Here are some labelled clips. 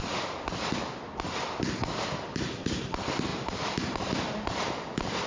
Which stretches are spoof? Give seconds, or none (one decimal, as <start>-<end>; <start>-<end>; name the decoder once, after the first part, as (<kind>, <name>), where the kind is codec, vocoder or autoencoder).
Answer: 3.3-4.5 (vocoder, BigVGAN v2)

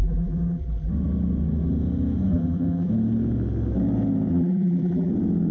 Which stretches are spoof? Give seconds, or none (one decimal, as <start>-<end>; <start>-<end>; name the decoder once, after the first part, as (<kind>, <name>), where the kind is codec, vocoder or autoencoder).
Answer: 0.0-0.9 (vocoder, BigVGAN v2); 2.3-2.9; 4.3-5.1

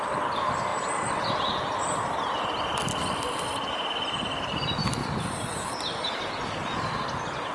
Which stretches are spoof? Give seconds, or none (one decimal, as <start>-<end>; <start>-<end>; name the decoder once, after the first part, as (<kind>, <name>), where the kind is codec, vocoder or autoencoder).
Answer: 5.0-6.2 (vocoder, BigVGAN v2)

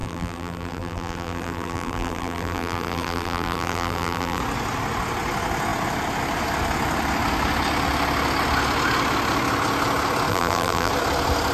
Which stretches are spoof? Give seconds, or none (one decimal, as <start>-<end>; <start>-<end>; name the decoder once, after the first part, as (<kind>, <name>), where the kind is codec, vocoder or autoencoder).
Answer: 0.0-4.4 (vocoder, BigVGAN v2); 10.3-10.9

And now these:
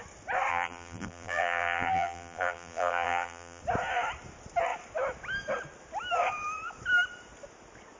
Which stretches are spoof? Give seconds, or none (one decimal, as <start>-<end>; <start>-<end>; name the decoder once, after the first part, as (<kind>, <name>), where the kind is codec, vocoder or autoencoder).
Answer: 0.5-3.6 (vocoder, BigVGAN v2)